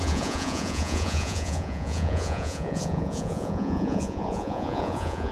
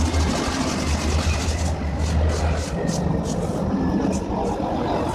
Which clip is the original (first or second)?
second